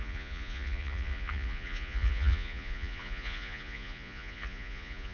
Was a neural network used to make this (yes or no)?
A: yes